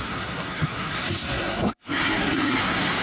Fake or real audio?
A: fake